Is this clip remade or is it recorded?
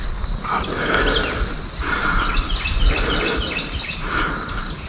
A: recorded